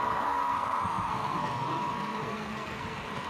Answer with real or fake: fake